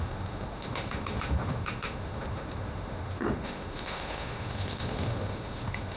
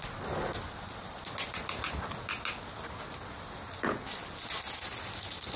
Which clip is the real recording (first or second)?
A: second